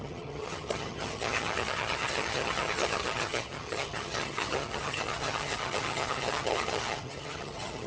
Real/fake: fake